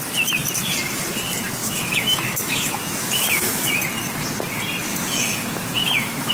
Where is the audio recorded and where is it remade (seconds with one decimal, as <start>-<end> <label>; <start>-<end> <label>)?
0.0-1.6 recorded; 1.6-3.7 remade; 3.7-4.9 recorded; 4.9-6.3 remade

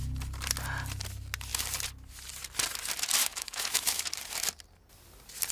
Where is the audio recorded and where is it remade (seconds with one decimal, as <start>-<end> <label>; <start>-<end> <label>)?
0.0-3.2 recorded; 3.2-4.0 remade; 4.0-5.5 recorded